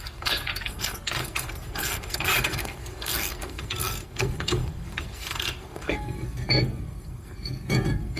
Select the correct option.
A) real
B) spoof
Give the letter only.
B